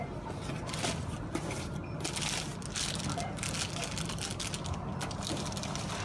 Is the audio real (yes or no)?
yes